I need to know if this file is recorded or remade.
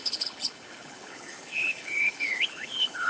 remade